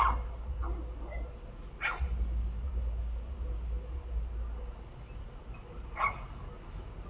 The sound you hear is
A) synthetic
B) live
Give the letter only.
B